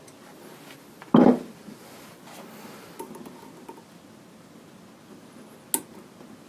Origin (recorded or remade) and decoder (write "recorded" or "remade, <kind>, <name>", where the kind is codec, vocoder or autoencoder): recorded